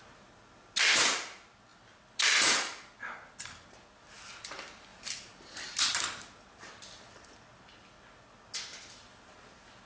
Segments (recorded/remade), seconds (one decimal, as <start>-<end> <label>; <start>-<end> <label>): 0.0-9.9 recorded